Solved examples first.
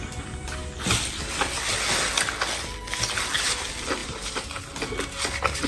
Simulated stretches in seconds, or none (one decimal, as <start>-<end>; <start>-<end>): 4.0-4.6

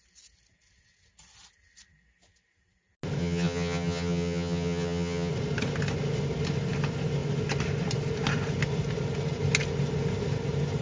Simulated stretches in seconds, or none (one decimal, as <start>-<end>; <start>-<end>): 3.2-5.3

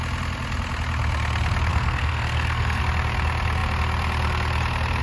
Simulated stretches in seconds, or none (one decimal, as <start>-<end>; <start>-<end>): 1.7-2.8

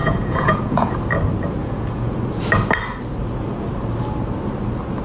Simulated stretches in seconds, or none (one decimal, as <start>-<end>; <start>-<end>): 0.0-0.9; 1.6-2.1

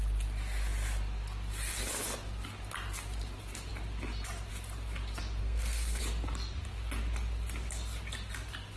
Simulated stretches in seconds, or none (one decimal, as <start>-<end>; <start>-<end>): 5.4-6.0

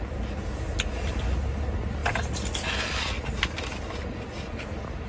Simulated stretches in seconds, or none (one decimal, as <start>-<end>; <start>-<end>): none

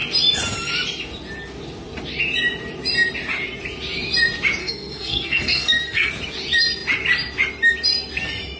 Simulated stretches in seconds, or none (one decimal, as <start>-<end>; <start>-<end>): 4.6-6.1

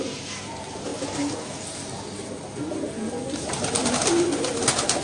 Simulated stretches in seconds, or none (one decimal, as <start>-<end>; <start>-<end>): none